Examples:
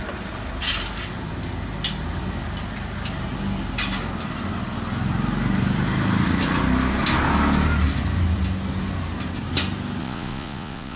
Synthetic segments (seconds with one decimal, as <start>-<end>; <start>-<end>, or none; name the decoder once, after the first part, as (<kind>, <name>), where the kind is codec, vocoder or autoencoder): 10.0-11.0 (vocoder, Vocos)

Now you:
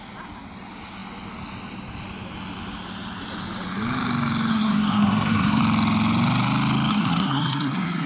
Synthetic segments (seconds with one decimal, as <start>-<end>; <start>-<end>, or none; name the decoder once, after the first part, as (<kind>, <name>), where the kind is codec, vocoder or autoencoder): 4.5-5.6 (codec, SNAC); 6.9-8.1

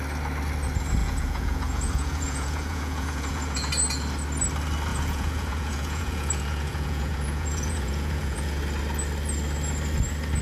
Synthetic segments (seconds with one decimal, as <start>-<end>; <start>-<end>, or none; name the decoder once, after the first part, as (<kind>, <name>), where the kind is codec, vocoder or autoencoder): 1.0-3.7 (vocoder, Vocos); 4.9-8.5

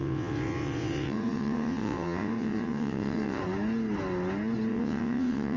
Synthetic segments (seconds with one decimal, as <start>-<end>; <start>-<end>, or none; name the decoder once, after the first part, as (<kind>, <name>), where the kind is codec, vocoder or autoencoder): 0.0-3.4 (vocoder, WaveNeXt); 4.7-5.6

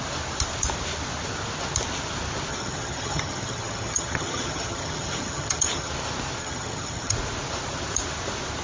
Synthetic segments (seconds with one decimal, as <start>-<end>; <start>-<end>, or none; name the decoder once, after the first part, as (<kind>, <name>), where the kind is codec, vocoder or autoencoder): 2.5-5.9 (vocoder, HiFi-GAN); 6.4-7.1

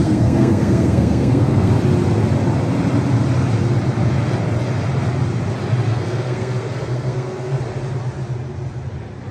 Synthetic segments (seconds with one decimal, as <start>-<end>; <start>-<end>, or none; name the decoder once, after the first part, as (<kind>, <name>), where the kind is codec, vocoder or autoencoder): 0.0-1.7 (codec, SNAC); 5.9-7.6

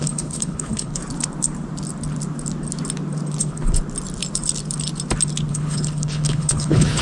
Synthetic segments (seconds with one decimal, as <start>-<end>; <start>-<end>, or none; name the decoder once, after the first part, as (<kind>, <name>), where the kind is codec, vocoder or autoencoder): 0.0-1.0 (codec, HILCodec); 3.4-3.8; 5.5-7.0